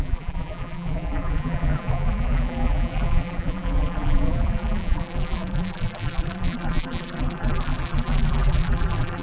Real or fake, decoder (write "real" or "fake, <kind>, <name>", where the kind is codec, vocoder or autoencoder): fake, vocoder, BigVGAN v2